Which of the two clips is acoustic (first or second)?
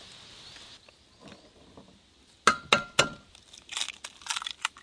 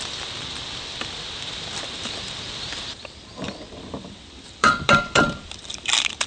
first